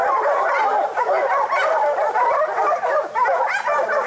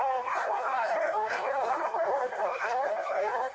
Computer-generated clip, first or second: second